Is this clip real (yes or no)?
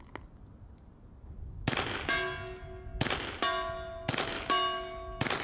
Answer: yes